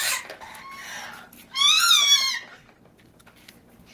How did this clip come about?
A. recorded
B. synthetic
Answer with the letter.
B